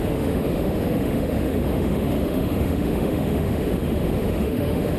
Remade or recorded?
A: remade